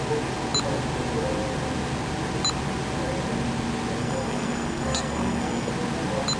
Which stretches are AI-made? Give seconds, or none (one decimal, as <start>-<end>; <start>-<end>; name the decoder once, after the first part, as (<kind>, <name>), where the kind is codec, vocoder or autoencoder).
4.0-5.7 (codec, SNAC)